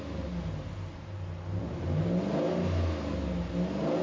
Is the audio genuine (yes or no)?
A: yes